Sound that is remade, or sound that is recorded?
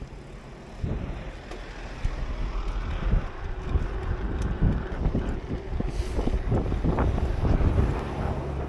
recorded